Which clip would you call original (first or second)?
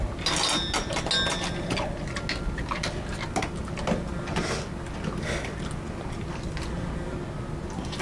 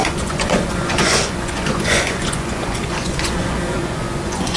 first